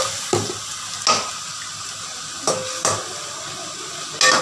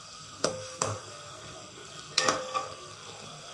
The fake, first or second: second